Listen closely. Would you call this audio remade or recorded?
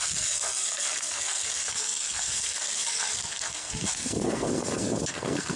remade